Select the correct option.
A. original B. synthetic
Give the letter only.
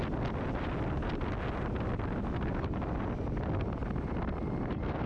A